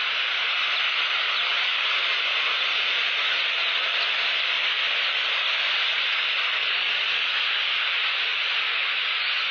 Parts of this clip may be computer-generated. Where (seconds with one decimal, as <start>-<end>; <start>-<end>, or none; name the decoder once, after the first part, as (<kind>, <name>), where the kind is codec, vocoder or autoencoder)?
0.0-1.5 (vocoder, BigVGAN v2); 3.9-8.3